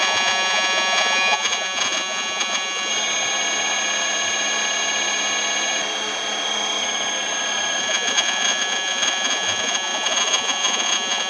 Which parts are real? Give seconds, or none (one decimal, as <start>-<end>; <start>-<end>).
2.9-7.8